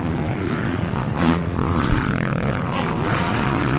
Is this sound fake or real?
fake